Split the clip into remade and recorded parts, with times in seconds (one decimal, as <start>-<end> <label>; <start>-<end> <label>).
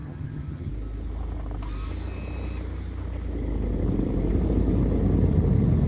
0.0-0.7 remade; 0.7-5.9 recorded